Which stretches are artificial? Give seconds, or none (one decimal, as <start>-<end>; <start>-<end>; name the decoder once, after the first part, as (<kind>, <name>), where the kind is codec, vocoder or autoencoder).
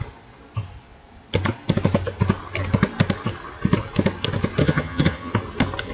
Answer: 4.6-5.3 (vocoder, HiFi-GAN)